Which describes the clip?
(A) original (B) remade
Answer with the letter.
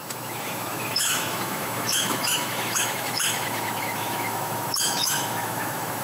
B